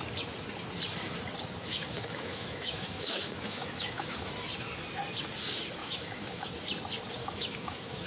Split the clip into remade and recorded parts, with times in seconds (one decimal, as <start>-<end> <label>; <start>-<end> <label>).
0.0-1.6 recorded; 1.6-4.3 remade; 4.3-5.8 recorded; 5.8-6.5 remade; 6.5-7.2 recorded; 7.2-8.1 remade

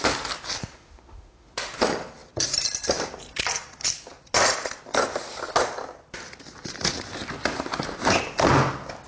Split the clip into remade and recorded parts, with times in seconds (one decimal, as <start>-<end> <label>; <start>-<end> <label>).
0.0-0.7 recorded; 0.7-1.7 remade; 1.7-9.1 recorded

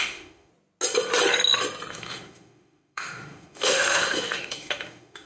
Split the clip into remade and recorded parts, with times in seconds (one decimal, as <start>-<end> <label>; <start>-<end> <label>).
0.0-0.5 remade; 0.5-1.9 recorded; 1.9-5.3 remade

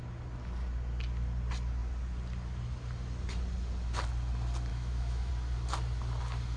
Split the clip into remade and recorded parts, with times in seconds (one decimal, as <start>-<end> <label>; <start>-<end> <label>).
0.0-4.7 recorded; 4.7-5.3 remade; 5.3-6.6 recorded

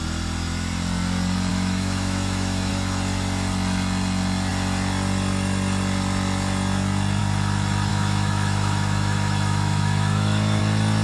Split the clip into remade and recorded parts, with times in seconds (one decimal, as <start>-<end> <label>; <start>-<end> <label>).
0.0-1.5 recorded; 1.5-2.7 remade; 2.7-7.9 recorded; 7.9-10.6 remade; 10.6-11.0 recorded

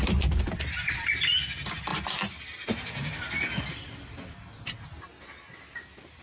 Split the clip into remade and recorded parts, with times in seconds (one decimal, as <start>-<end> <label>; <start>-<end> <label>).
0.0-6.2 recorded

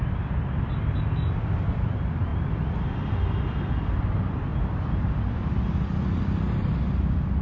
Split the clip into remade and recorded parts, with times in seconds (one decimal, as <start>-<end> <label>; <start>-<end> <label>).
0.0-7.4 recorded